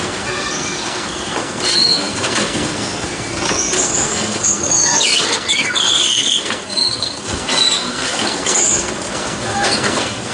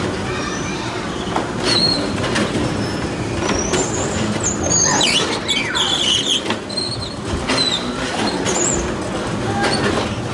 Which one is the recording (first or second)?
second